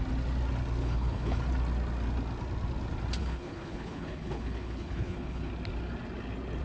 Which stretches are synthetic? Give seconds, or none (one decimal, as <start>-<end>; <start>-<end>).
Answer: 0.8-1.4; 3.2-5.5